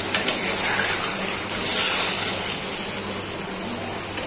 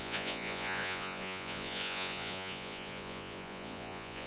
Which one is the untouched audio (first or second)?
first